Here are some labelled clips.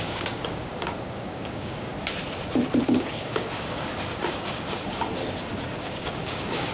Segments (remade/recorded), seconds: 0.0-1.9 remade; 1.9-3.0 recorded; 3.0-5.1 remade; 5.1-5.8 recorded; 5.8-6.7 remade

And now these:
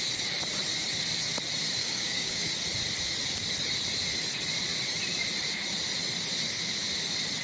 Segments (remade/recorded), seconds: 0.0-1.8 recorded; 1.8-2.5 remade; 2.5-7.4 recorded

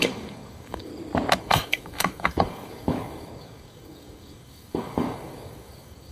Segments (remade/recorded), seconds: 0.0-0.9 remade; 0.9-1.4 recorded; 1.4-6.1 remade

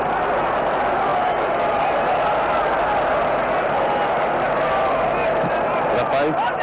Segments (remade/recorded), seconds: 0.0-6.6 recorded

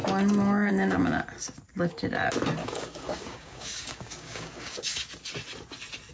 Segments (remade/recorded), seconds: 0.0-2.6 recorded; 2.6-5.0 remade; 5.0-6.1 recorded